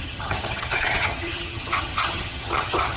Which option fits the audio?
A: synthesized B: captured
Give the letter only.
A